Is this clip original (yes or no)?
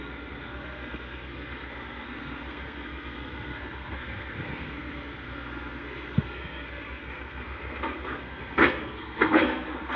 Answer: no